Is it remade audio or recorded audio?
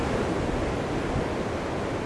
remade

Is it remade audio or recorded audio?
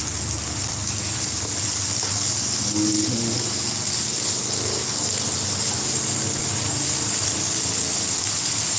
recorded